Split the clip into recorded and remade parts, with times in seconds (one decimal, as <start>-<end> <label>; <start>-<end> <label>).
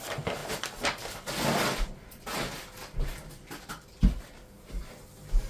0.0-5.5 recorded